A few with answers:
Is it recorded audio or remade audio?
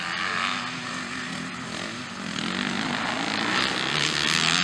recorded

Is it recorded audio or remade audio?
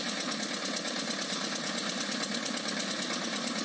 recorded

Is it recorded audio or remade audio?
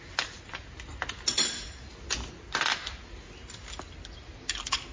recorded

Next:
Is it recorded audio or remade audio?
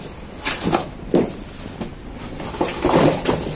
recorded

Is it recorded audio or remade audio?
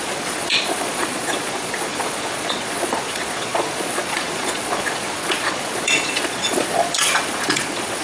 remade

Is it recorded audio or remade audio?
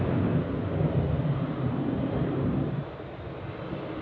recorded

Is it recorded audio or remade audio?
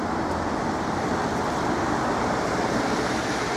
remade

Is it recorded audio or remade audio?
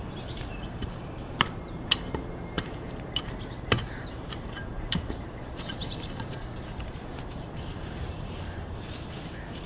remade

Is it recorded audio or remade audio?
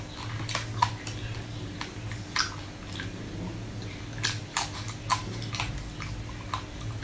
recorded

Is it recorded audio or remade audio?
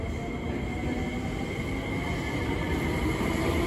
recorded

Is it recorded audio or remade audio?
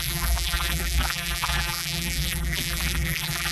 remade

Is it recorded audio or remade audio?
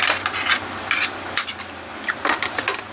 recorded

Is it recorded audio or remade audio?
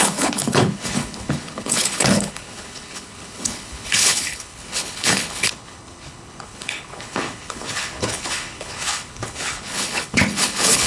remade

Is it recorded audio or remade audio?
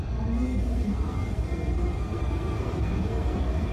remade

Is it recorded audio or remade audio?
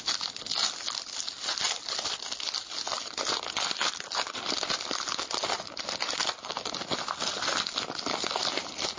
recorded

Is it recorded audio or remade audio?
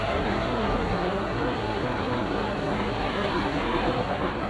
remade